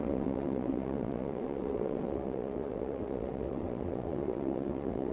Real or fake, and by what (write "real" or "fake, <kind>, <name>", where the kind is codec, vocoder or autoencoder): fake, vocoder, WaveNeXt